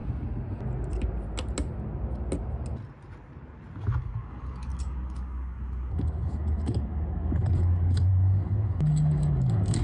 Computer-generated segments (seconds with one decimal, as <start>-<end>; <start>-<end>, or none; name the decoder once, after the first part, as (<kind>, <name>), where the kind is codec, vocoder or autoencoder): 4.0-9.8 (codec, DAC)